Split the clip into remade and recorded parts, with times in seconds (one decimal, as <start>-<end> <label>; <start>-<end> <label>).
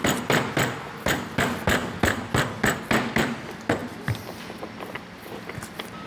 0.0-1.4 remade; 1.4-3.8 recorded; 3.8-6.1 remade